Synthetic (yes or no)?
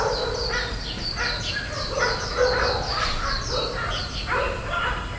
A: no